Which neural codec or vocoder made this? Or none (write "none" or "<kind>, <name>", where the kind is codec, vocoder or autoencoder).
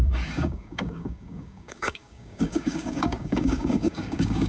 codec, DAC